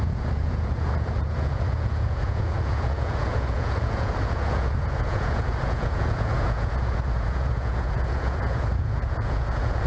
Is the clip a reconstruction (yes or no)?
yes